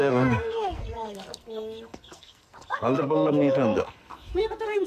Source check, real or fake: fake